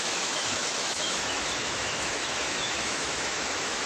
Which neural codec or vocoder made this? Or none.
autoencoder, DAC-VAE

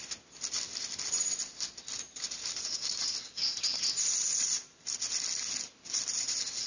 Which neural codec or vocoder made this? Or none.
none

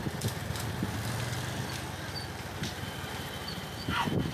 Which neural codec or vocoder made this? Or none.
none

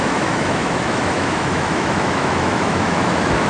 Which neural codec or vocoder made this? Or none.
autoencoder, DAC-VAE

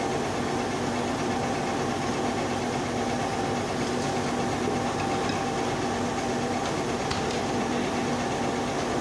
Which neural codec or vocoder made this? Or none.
none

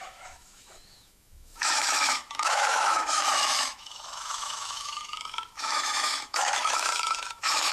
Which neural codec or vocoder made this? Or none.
autoencoder, DAC-VAE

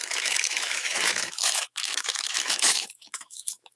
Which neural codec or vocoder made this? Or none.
autoencoder, DAC-VAE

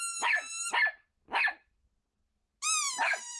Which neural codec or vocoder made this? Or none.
none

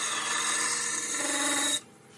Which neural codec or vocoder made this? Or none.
none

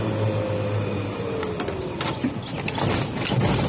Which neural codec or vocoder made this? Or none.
none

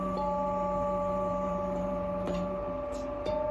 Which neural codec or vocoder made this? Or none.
none